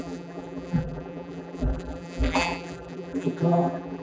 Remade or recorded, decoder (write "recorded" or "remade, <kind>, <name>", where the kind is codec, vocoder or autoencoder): remade, vocoder, BigVGAN v2